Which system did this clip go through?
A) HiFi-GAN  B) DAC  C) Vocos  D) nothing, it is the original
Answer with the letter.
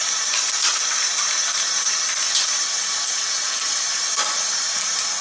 D